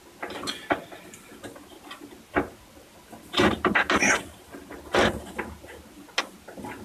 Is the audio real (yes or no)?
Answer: yes